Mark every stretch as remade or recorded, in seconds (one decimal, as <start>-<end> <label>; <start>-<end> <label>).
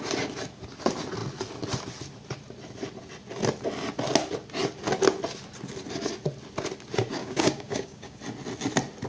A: 0.0-7.2 recorded; 7.2-8.2 remade; 8.2-9.1 recorded